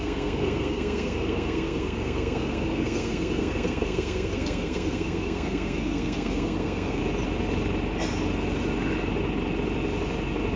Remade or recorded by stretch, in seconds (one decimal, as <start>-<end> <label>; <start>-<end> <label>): 0.0-7.0 remade; 7.0-10.6 recorded